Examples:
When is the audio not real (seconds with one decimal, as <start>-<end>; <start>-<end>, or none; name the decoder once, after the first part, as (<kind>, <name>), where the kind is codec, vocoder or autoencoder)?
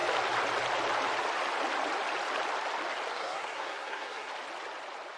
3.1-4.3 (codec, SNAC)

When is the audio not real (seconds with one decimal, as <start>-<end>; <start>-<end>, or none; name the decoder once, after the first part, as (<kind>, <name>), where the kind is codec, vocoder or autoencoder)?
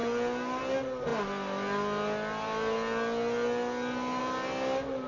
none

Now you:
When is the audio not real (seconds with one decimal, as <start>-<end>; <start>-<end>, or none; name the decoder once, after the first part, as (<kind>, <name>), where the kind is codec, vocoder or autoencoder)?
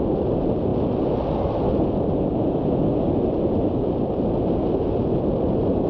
none